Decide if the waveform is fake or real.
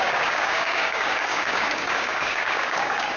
fake